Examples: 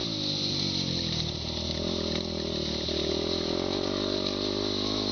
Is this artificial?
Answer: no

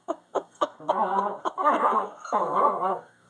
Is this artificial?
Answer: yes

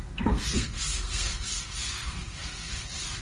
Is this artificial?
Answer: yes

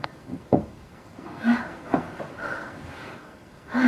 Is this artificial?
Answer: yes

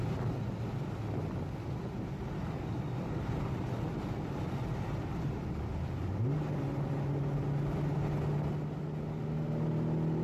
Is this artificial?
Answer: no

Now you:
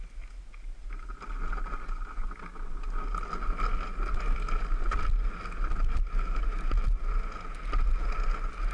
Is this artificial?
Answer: no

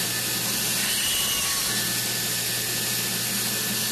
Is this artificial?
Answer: no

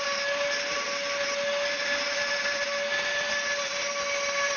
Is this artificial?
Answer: no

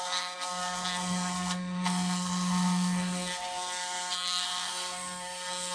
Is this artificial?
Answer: yes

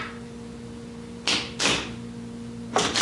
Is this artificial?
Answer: no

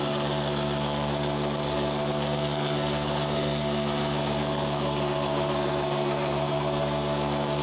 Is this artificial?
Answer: yes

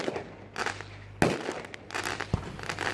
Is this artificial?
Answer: no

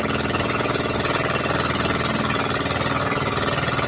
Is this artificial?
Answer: no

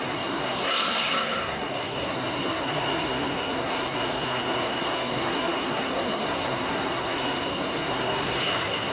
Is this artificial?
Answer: yes